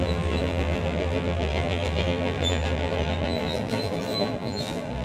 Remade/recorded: remade